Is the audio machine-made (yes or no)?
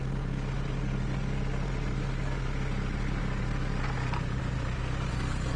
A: no